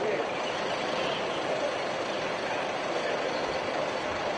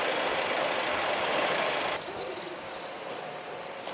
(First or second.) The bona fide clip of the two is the first